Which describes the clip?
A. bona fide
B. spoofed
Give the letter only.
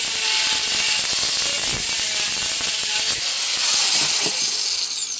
A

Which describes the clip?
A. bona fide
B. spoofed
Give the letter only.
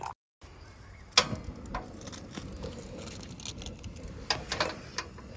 A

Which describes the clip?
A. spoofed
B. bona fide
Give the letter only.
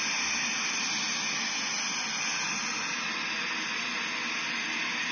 B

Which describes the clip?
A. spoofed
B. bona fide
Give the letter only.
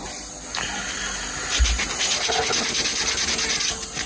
B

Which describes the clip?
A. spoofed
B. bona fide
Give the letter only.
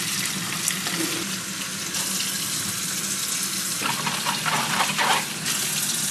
B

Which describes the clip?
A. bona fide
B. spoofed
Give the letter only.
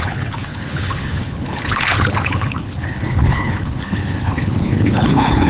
B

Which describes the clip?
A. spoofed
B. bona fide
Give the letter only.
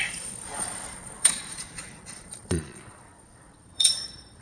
A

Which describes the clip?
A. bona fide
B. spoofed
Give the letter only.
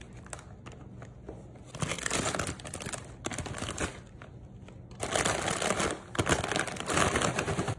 A